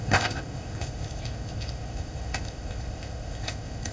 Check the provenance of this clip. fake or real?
fake